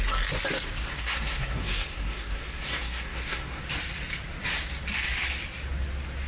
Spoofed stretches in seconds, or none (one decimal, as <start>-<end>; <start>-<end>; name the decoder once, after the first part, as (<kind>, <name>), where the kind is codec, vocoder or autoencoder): 0.9-3.6 (codec, SNAC)